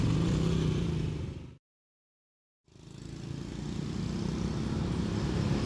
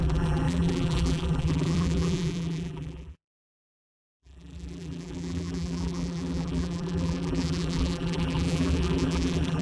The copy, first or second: second